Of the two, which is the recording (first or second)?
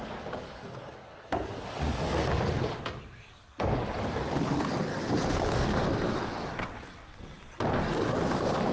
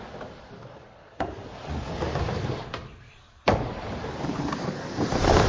first